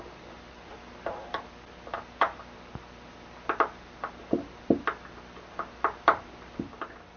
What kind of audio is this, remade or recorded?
remade